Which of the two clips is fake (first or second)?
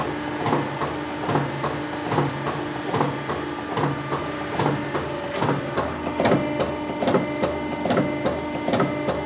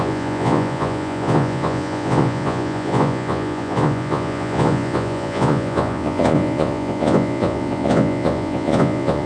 second